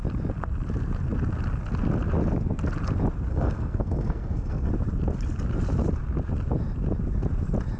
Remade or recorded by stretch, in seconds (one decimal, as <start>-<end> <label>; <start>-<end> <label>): 0.0-3.3 recorded; 3.3-4.7 remade; 4.7-7.8 recorded